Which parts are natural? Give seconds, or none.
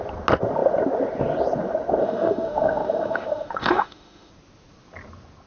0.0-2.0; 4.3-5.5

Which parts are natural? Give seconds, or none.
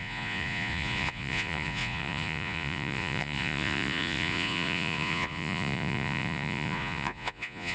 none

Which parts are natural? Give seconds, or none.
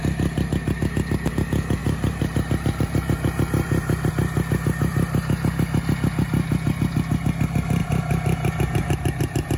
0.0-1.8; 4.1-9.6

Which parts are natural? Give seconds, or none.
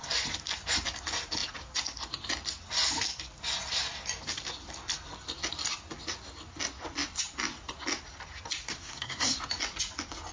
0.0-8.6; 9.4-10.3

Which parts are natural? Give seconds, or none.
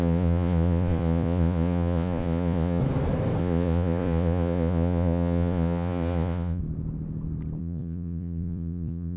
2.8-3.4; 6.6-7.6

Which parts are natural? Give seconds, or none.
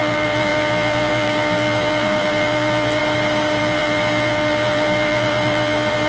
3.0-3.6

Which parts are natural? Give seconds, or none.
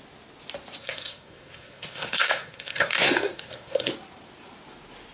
0.0-0.8; 3.9-5.1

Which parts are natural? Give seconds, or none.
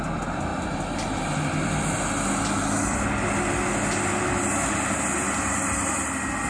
0.0-6.5